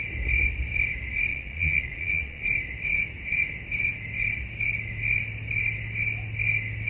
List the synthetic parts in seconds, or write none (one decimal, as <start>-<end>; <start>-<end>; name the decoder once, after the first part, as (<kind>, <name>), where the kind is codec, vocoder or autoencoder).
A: 1.3-2.4 (vocoder, Vocos)